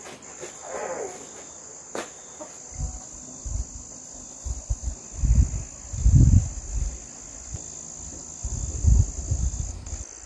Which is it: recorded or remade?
recorded